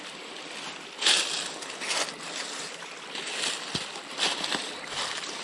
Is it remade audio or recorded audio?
recorded